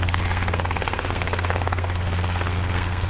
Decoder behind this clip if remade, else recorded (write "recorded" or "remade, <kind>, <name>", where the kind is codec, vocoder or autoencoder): remade, codec, SNAC